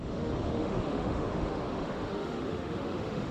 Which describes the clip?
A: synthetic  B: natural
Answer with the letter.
A